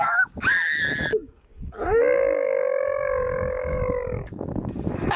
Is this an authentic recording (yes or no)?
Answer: no